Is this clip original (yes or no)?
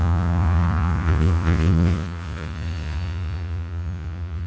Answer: no